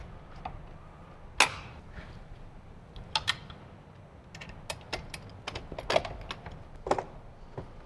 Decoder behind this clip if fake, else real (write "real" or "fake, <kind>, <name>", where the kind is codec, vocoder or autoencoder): real